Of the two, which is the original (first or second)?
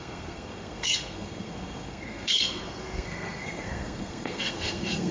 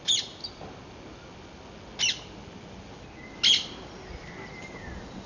second